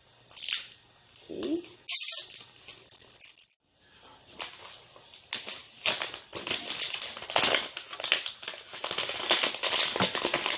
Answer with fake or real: real